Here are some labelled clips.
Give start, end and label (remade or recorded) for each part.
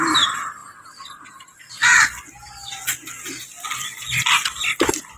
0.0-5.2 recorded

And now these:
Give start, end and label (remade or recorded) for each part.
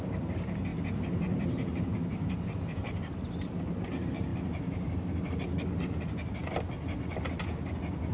0.0-0.7 recorded; 0.7-3.2 remade; 3.2-8.1 recorded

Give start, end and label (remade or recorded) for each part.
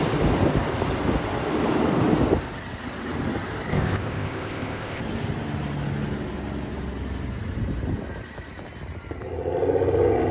0.0-3.7 recorded; 3.7-5.0 remade; 5.0-10.3 recorded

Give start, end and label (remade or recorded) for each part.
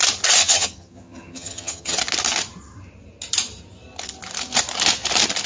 0.0-0.4 recorded; 0.4-2.0 remade; 2.0-5.5 recorded